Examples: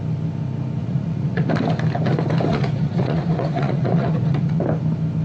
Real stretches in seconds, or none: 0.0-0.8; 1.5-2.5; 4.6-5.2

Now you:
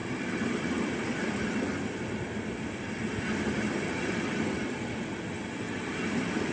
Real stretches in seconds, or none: 0.0-6.5

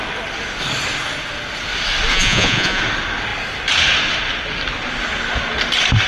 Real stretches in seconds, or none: 0.0-2.1; 2.8-6.1

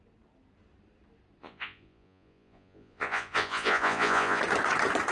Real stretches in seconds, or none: 0.0-1.4; 4.4-5.1

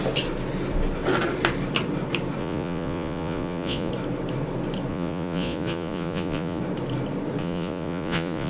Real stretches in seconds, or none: 0.0-2.4; 3.9-4.9; 6.6-7.4